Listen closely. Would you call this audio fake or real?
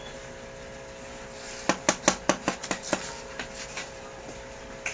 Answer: real